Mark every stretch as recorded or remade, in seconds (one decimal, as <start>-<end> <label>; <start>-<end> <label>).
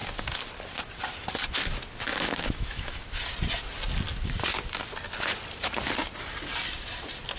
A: 0.0-2.1 recorded; 2.1-3.2 remade; 3.2-7.4 recorded